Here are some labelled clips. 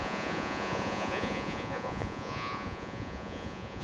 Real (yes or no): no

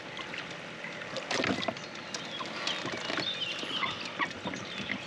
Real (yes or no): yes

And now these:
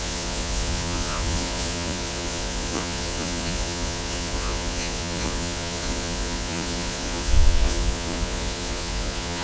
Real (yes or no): no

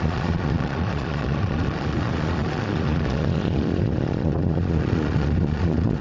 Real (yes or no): no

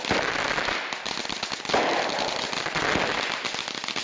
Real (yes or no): yes